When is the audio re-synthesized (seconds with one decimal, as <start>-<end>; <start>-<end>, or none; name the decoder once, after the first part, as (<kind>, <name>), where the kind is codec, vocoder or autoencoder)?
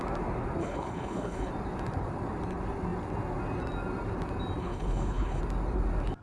0.6-1.5 (codec, HILCodec); 4.6-5.4